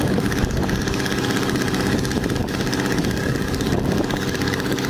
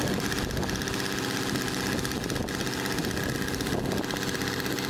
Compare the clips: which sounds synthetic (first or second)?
first